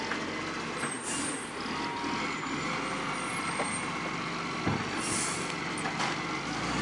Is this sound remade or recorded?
recorded